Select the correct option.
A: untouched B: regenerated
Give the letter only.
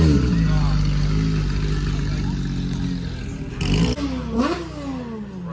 A